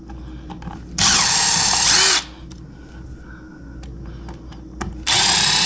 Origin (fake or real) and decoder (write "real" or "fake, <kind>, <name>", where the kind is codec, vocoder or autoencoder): real